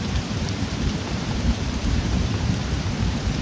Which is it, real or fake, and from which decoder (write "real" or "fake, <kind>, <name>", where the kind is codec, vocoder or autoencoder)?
fake, vocoder, BigVGAN v2